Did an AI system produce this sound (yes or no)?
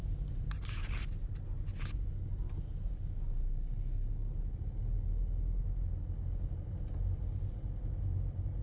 no